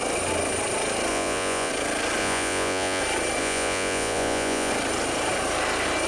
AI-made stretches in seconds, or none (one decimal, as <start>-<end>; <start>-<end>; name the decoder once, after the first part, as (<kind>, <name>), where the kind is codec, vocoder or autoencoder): 1.1-1.7 (vocoder, Vocos); 2.2-3.0; 3.4-4.7